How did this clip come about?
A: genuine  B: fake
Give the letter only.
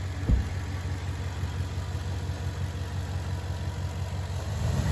A